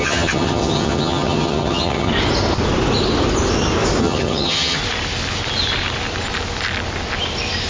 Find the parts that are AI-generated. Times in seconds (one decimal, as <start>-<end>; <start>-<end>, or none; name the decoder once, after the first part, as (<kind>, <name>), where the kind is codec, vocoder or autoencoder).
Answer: 0.0-2.1 (vocoder, HiFi-GAN); 4.0-4.8